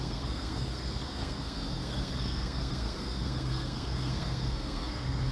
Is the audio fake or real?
fake